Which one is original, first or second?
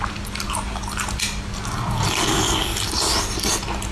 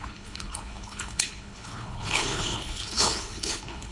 first